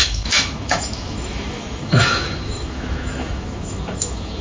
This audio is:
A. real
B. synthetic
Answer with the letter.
B